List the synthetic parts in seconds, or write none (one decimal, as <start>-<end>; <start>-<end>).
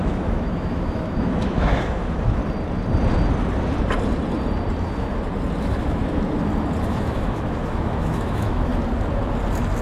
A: 0.0-2.4; 5.6-6.0; 6.8-8.7